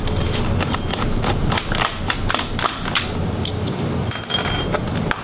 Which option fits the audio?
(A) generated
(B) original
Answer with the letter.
B